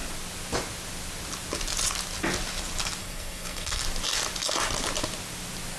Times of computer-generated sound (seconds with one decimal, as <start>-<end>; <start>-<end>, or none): 3.0-3.8